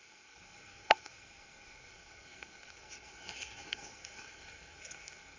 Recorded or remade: remade